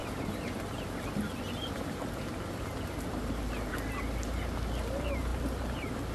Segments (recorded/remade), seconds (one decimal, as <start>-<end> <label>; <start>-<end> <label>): 0.0-6.1 recorded